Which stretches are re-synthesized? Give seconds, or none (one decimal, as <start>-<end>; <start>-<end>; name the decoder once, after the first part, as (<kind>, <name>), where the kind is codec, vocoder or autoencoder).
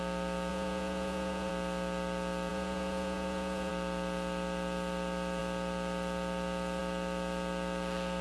0.5-1.5 (vocoder, Vocos); 2.5-3.7